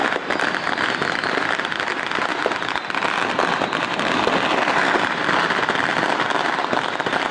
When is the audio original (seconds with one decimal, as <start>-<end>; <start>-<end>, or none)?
5.9-6.6